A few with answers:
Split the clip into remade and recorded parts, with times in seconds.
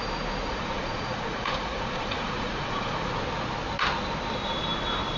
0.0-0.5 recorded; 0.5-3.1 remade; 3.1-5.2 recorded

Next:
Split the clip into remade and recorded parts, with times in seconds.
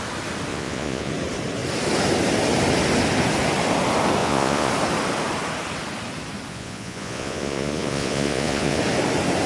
0.0-0.5 recorded; 0.5-1.1 remade; 1.1-4.2 recorded; 4.2-4.7 remade; 4.7-6.5 recorded; 6.5-8.8 remade; 8.8-9.5 recorded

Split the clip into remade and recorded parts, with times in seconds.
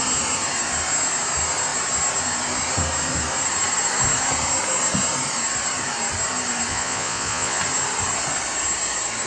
0.0-6.7 recorded; 6.7-7.6 remade; 7.6-9.3 recorded